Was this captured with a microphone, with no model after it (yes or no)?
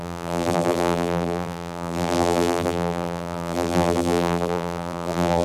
no